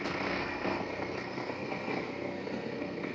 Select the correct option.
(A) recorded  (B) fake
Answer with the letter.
B